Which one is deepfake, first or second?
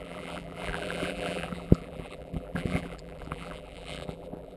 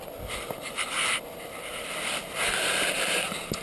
first